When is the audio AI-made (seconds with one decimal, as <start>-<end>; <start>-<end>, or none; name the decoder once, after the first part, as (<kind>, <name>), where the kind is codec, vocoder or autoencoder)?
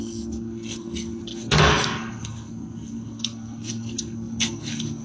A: 0.0-5.0 (codec, SNAC)